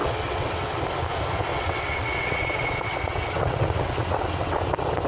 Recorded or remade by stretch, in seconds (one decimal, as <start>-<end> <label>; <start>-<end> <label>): 0.0-0.8 remade; 0.8-1.5 recorded; 1.5-4.6 remade; 4.6-5.1 recorded